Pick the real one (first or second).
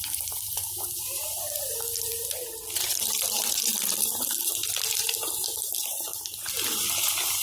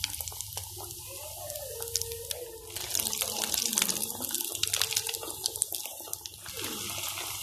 second